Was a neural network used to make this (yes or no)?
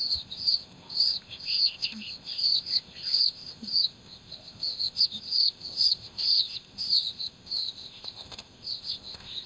yes